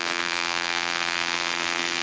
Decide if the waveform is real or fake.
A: fake